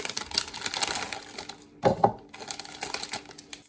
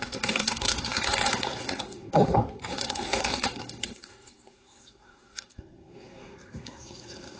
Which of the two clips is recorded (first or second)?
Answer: first